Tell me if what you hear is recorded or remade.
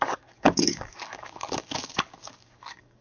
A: remade